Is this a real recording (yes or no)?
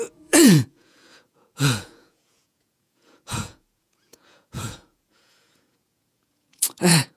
no